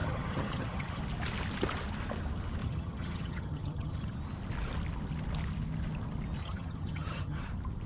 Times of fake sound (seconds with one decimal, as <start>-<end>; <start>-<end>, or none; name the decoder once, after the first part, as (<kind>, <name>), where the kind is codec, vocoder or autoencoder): 0.0-1.0 (vocoder, HiFi-GAN); 2.6-4.2; 6.4-7.4